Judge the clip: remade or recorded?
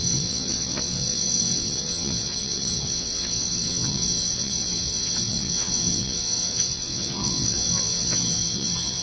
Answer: remade